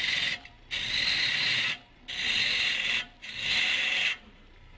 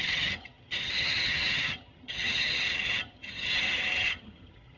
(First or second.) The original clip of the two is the first